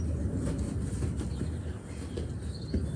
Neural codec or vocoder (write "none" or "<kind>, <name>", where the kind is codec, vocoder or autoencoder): none